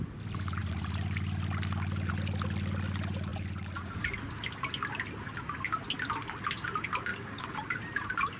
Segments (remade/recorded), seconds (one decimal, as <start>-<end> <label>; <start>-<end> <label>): 0.0-7.1 recorded; 7.1-7.8 remade; 7.8-8.4 recorded

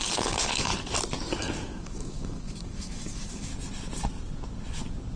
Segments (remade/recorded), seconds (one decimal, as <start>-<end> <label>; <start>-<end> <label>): 0.0-0.7 remade; 0.7-1.4 recorded; 1.4-3.5 remade; 3.5-5.2 recorded

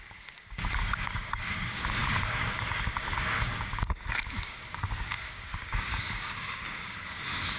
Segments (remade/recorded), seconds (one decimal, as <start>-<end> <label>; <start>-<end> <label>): 0.0-7.6 remade

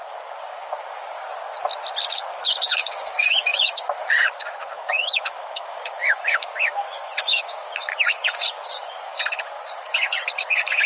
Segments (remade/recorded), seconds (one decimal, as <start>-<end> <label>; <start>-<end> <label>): 0.0-1.3 remade; 1.3-2.1 recorded; 2.1-10.9 remade

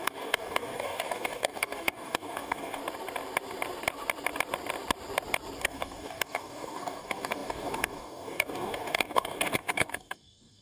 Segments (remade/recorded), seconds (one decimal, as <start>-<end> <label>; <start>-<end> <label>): 0.0-2.8 remade; 2.8-5.6 recorded; 5.6-10.6 remade